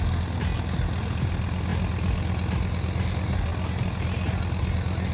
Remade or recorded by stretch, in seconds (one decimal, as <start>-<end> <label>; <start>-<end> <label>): 0.0-5.1 recorded